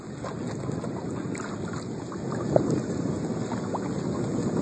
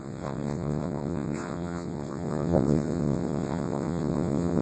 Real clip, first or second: first